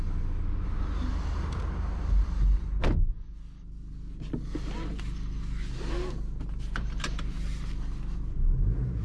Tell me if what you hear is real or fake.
real